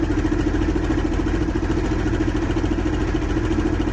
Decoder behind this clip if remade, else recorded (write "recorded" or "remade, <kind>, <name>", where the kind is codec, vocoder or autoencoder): recorded